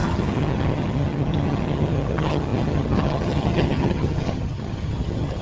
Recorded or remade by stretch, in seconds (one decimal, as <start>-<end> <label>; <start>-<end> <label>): 0.0-5.4 remade

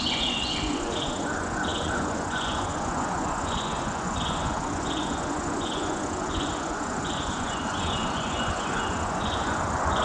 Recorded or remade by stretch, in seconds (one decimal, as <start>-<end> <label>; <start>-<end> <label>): 0.0-10.0 remade

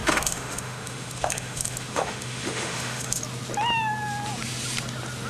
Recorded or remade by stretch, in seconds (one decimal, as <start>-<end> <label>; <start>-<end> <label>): 0.0-3.2 remade; 3.2-5.3 recorded

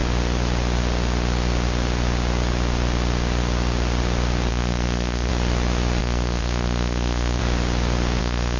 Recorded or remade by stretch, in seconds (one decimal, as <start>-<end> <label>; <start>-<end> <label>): 0.0-4.5 recorded; 4.5-5.3 remade; 5.3-6.0 recorded; 6.0-7.4 remade; 7.4-8.2 recorded; 8.2-8.6 remade